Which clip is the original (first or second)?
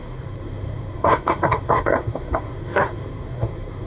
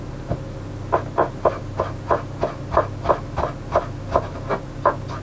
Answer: second